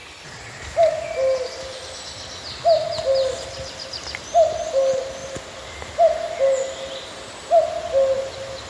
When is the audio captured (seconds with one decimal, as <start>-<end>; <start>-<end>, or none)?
0.0-8.7

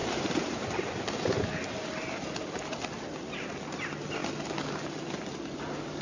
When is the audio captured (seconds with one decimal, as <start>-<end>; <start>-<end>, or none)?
0.0-6.0

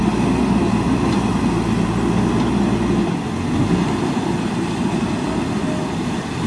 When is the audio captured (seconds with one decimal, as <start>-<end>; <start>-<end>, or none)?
0.0-6.5

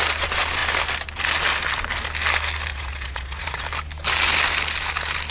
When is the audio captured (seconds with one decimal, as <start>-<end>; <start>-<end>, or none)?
0.0-2.7; 3.6-5.3

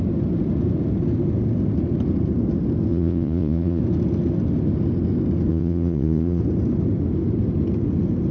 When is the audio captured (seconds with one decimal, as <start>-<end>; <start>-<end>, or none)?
0.0-2.9; 3.8-5.5; 6.4-8.3

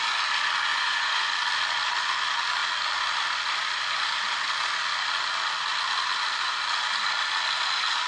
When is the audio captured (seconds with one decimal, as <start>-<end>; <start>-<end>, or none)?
0.0-0.7; 1.3-8.1

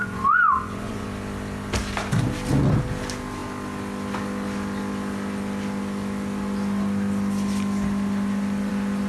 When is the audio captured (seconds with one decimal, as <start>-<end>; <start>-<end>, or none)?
1.1-9.1